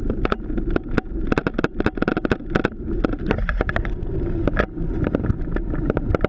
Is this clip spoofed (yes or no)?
no